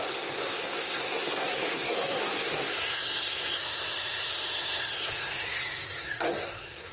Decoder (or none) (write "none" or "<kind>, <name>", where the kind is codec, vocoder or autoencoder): codec, SNAC